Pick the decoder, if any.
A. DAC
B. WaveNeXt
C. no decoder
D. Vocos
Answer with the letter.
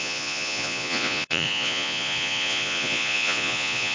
D